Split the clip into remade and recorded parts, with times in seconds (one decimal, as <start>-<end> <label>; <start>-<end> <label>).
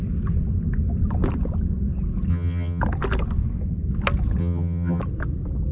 0.0-2.3 recorded; 2.3-2.8 remade; 2.8-4.4 recorded; 4.4-5.0 remade; 5.0-5.7 recorded